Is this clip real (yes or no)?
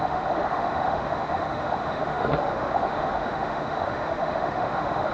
no